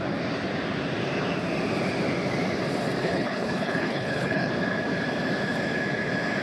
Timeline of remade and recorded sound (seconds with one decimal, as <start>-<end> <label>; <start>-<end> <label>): 0.0-3.0 recorded; 3.0-4.5 remade; 4.5-6.4 recorded